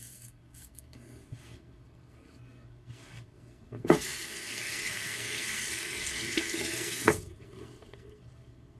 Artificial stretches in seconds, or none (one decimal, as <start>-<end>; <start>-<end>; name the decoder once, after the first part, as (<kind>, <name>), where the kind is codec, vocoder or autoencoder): 0.0-8.8 (codec, SNAC)